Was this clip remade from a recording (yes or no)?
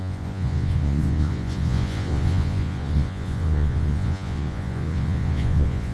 yes